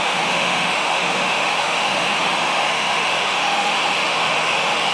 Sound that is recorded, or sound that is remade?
remade